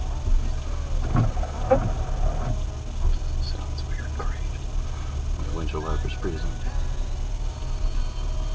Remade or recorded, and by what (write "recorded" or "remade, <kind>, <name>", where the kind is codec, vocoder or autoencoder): recorded